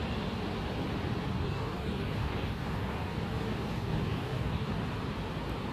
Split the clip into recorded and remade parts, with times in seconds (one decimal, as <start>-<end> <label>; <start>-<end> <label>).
0.0-1.3 recorded; 1.3-4.7 remade; 4.7-5.7 recorded